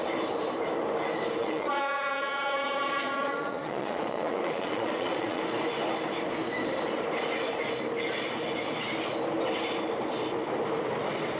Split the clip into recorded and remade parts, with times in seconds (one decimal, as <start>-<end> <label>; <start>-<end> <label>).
0.0-1.4 recorded; 1.4-5.4 remade; 5.4-11.4 recorded